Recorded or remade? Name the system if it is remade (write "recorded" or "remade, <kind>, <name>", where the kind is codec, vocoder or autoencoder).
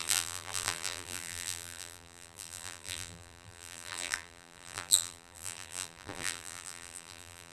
remade, vocoder, BigVGAN v2